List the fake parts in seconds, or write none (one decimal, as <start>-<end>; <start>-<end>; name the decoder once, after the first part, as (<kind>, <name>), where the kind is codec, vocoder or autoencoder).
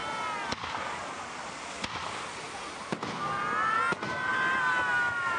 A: none